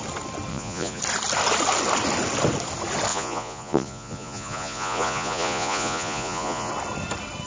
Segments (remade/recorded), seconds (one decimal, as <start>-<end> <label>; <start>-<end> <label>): 0.0-0.5 recorded; 0.5-1.0 remade; 1.0-3.1 recorded; 3.1-6.7 remade; 6.7-7.5 recorded